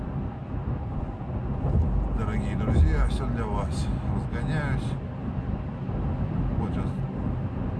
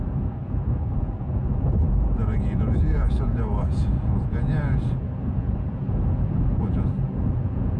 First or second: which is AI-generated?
second